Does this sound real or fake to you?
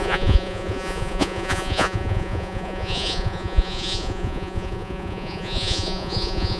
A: fake